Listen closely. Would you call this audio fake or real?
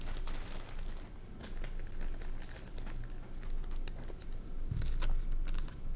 real